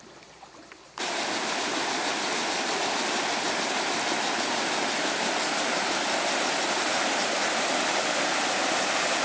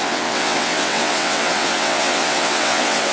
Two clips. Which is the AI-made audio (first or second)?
second